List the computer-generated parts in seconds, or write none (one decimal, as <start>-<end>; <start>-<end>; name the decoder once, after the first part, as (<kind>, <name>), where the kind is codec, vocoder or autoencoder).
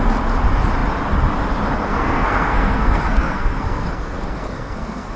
1.9-5.2 (codec, SNAC)